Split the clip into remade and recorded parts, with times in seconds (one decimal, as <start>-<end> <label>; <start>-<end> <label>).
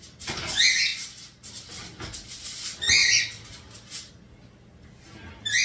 0.0-5.6 recorded